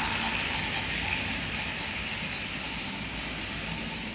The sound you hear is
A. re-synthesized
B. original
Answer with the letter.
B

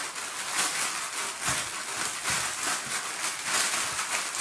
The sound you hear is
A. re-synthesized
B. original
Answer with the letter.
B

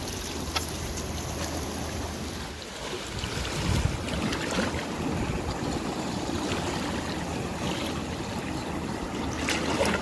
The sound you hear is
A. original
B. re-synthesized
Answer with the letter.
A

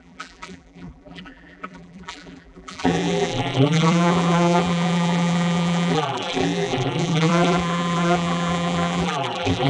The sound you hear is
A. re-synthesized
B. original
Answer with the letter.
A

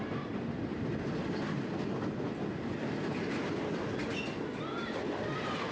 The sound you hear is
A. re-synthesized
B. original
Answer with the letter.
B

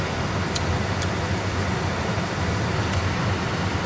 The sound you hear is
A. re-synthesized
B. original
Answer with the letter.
B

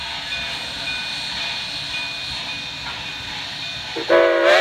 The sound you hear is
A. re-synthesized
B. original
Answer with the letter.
B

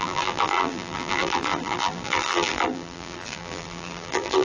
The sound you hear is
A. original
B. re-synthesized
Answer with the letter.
B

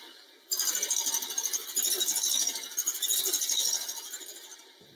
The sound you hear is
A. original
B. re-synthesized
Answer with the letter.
A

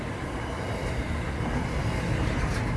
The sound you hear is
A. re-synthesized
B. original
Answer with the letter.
B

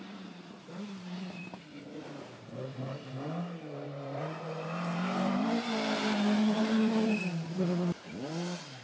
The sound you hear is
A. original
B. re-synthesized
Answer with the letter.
B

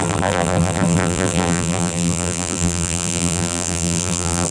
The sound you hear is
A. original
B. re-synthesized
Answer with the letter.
B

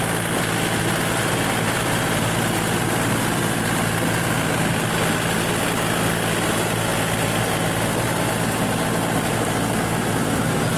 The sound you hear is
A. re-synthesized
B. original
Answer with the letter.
B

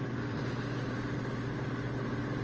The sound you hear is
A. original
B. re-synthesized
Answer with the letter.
B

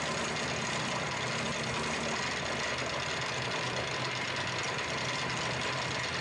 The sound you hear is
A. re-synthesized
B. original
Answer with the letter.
B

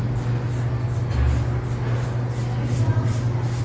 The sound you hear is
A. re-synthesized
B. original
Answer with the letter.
B